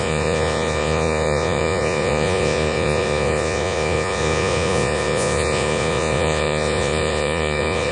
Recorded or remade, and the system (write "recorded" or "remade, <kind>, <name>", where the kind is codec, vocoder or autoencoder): remade, vocoder, Vocos